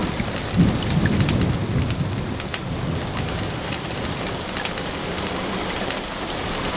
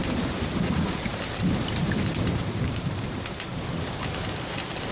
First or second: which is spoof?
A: second